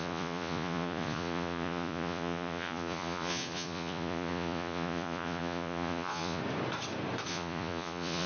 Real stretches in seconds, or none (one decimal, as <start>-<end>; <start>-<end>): 6.4-7.3